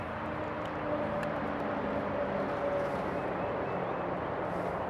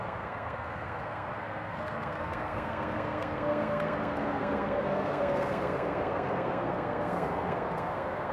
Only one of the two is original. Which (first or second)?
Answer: first